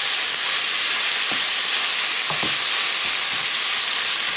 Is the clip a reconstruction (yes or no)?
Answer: no